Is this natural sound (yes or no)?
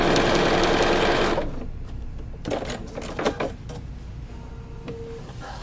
yes